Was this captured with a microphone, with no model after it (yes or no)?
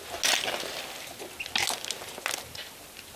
yes